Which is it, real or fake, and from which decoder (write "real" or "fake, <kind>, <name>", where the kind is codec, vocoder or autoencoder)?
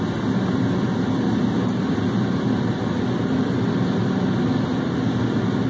real